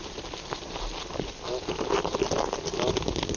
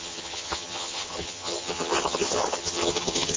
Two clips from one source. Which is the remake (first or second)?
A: second